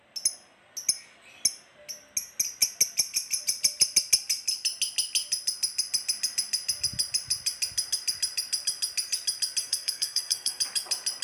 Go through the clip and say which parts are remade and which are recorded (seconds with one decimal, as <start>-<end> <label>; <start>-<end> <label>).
0.0-9.6 recorded; 9.6-10.6 remade; 10.6-11.2 recorded